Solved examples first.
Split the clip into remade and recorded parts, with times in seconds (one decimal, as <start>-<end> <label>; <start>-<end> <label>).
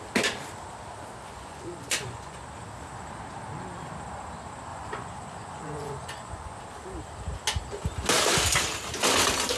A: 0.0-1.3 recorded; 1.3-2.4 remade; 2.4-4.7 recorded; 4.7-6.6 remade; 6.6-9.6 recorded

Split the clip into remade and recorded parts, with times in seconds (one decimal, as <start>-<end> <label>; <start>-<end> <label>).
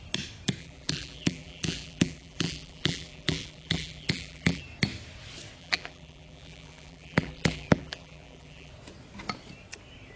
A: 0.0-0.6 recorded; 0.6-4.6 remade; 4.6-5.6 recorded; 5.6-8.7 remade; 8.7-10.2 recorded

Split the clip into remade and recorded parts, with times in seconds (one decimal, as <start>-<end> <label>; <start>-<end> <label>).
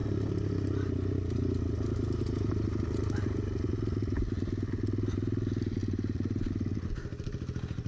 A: 0.0-7.9 recorded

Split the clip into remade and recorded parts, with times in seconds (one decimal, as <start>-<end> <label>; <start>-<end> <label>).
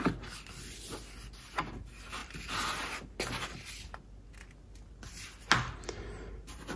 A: 0.0-6.8 recorded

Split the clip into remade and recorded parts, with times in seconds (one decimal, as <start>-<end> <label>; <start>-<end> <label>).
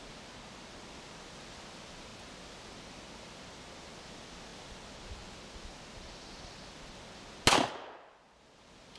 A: 0.0-9.0 recorded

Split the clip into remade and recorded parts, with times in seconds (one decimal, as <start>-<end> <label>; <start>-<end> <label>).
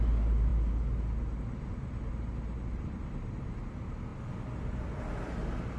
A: 0.0-5.8 recorded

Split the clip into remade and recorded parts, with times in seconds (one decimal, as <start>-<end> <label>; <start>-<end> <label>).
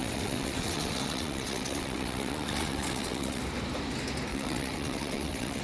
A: 0.0-3.4 remade; 3.4-4.3 recorded; 4.3-5.6 remade